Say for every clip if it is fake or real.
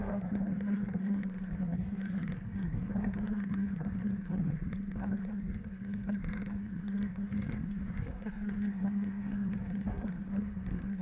fake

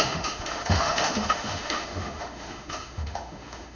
fake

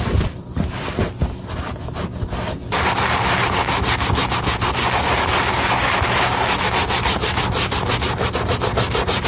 real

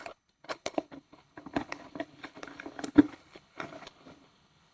fake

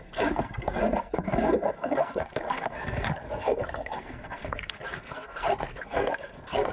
fake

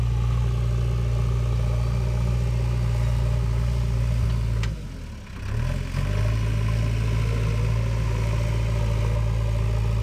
real